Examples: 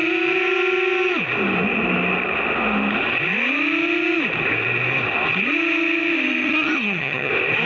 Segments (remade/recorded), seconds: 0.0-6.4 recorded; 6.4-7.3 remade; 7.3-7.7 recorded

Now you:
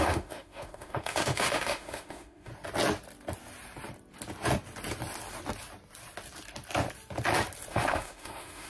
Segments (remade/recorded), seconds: 0.0-2.5 remade; 2.5-7.7 recorded; 7.7-8.7 remade

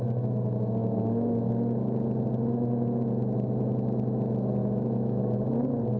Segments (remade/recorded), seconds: 0.0-0.8 recorded; 0.8-1.5 remade; 1.5-4.6 recorded; 4.6-5.2 remade; 5.2-6.0 recorded

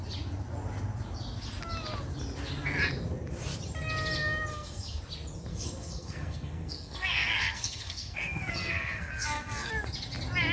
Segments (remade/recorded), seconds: 0.0-4.5 recorded; 4.5-5.0 remade; 5.0-5.5 recorded; 5.5-9.7 remade; 9.7-10.5 recorded

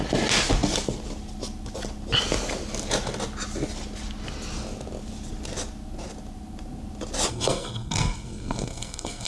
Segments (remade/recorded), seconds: 0.0-7.3 recorded; 7.3-9.3 remade

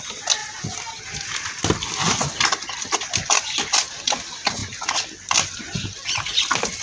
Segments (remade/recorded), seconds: 0.0-6.8 recorded

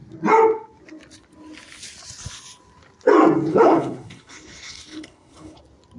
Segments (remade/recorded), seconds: 0.0-3.5 recorded; 3.5-5.6 remade; 5.6-6.0 recorded

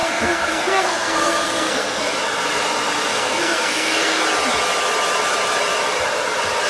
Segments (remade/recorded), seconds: 0.0-2.1 remade; 2.1-3.1 recorded; 3.1-4.2 remade; 4.2-6.7 recorded